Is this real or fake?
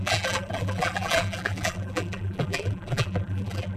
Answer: fake